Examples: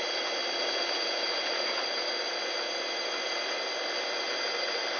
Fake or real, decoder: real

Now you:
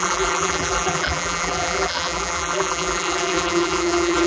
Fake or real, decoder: fake, vocoder, BigVGAN v2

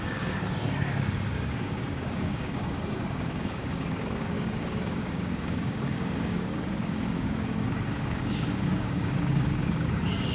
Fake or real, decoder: fake, codec, DAC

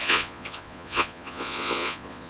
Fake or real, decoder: fake, vocoder, Vocos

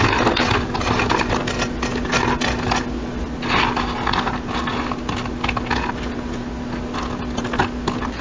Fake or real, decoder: real